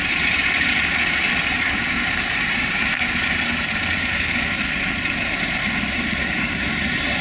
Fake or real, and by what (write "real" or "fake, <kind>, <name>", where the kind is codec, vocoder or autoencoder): fake, vocoder, BigVGAN v2